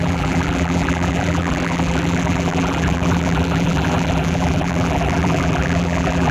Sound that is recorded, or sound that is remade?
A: remade